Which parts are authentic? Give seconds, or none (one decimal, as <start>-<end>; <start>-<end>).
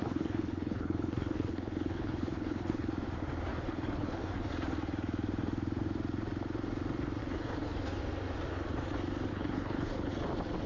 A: 2.9-3.5; 4.5-7.2; 8.0-9.3; 10.1-10.7